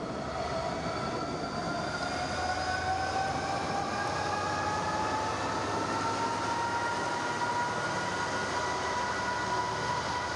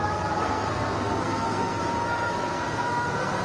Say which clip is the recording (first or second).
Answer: first